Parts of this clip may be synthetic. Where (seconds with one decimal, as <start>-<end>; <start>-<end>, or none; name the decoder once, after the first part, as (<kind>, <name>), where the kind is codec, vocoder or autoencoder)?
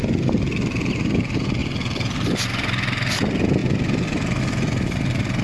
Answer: 1.6-2.5 (vocoder, BigVGAN v2)